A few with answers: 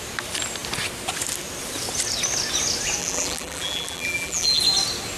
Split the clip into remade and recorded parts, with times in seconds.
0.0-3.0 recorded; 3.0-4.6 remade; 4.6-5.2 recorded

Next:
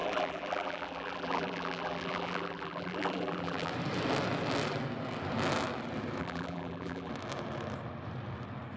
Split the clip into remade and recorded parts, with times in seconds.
0.0-3.7 remade; 3.7-6.2 recorded; 6.2-7.1 remade; 7.1-8.8 recorded

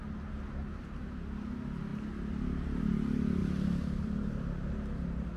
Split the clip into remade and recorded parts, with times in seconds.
0.0-3.4 recorded; 3.4-4.3 remade; 4.3-5.4 recorded

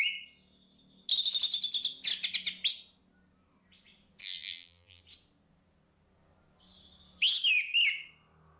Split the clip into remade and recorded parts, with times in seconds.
0.0-4.2 recorded; 4.2-5.0 remade; 5.0-8.6 recorded

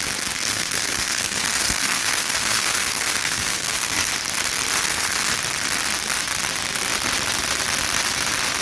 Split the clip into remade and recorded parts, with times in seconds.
0.0-0.5 recorded; 0.5-4.1 remade; 4.1-4.8 recorded; 4.8-5.3 remade; 5.3-8.6 recorded

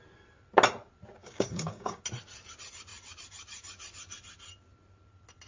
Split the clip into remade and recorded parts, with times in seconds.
0.0-1.2 recorded; 1.2-2.0 remade; 2.0-5.5 recorded

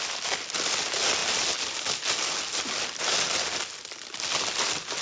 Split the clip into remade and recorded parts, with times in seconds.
0.0-5.0 recorded

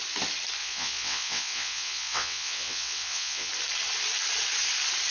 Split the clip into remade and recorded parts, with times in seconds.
0.0-0.6 recorded; 0.6-3.5 remade; 3.5-5.1 recorded